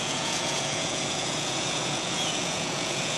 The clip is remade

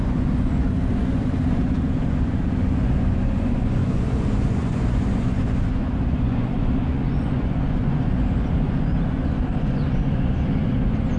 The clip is remade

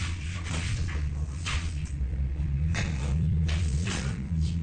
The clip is remade